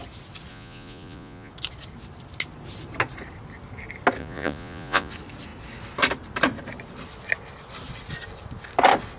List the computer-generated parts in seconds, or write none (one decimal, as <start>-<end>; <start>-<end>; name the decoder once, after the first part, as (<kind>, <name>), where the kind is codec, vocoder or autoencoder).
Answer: 0.5-1.5 (vocoder, Vocos); 4.2-5.1